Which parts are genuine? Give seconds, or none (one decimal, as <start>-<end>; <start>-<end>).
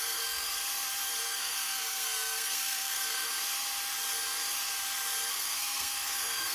0.6-1.2; 3.3-5.3